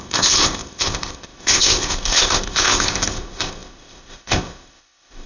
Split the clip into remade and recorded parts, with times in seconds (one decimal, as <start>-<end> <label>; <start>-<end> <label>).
0.0-5.3 remade